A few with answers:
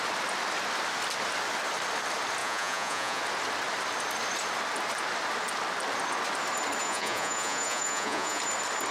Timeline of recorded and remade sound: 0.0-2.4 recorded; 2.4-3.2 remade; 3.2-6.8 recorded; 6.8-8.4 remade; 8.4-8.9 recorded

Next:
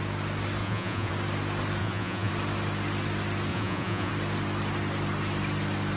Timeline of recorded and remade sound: 0.0-0.6 recorded; 0.6-1.1 remade; 1.1-1.8 recorded; 1.8-2.3 remade; 2.3-3.5 recorded; 3.5-4.1 remade; 4.1-6.0 recorded

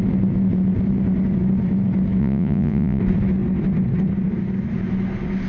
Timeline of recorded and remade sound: 0.0-2.2 recorded; 2.2-3.0 remade; 3.0-5.5 recorded

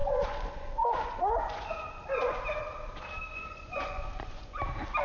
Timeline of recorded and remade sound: 0.0-2.4 remade; 2.4-3.3 recorded; 3.3-4.6 remade; 4.6-5.0 recorded

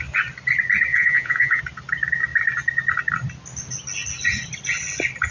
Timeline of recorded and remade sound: 0.0-0.9 recorded; 0.9-1.6 remade; 1.6-5.3 recorded